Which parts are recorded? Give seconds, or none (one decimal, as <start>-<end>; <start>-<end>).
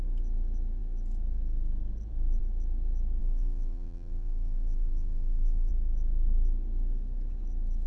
0.0-3.2; 5.7-7.9